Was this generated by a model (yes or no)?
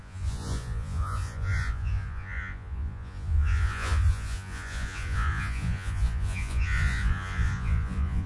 yes